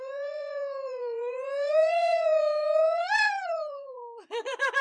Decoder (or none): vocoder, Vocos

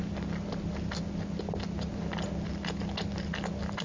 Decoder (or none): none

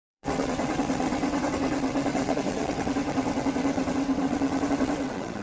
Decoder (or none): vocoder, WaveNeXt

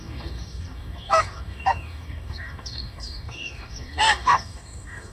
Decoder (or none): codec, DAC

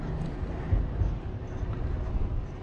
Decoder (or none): none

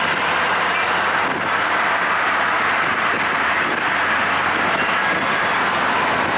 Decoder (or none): vocoder, BigVGAN v2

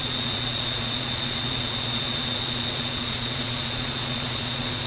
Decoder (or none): vocoder, Vocos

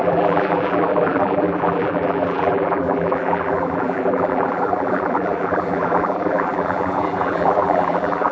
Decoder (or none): vocoder, BigVGAN v2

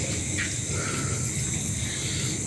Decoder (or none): none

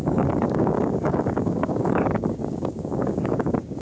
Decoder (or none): codec, DAC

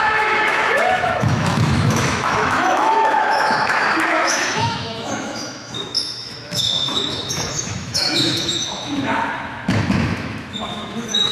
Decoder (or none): autoencoder, DAC-VAE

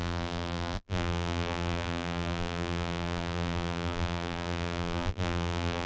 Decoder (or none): vocoder, BigVGAN v2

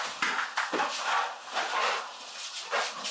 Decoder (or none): none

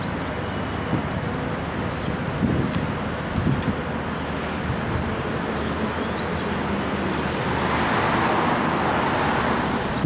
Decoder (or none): none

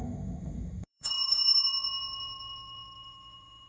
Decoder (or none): autoencoder, DAC-VAE